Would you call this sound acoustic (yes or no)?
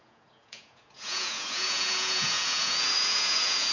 no